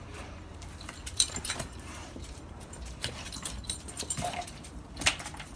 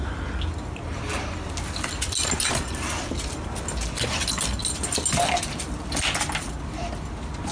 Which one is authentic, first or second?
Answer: second